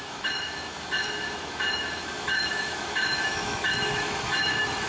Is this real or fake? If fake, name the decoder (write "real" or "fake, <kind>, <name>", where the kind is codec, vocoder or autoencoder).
fake, autoencoder, DAC-VAE